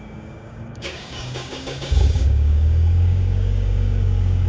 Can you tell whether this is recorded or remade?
remade